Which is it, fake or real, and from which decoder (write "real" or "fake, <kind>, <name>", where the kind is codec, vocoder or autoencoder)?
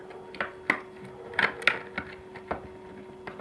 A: real